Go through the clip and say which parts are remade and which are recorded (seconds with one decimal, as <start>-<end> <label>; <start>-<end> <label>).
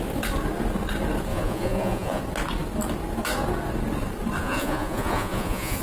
0.0-1.3 recorded; 1.3-2.2 remade; 2.2-4.4 recorded; 4.4-5.8 remade